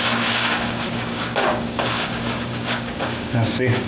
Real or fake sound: fake